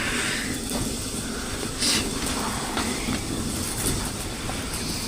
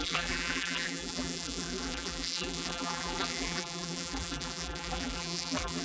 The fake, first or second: second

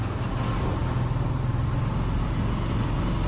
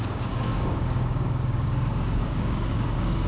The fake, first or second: second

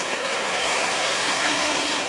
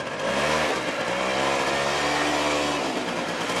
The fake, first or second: first